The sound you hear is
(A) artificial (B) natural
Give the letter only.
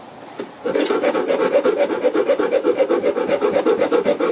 B